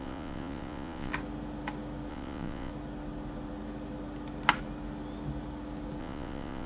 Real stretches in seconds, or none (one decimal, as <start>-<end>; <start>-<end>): 1.1-2.1; 2.7-6.0